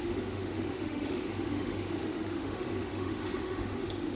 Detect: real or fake fake